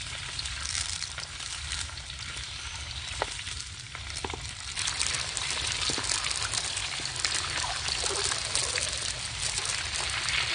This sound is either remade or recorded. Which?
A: remade